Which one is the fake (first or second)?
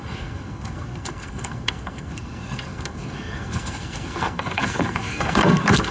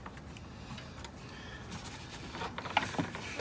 first